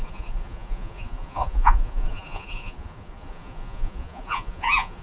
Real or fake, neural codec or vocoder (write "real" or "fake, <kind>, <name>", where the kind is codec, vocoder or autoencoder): fake, vocoder, Vocos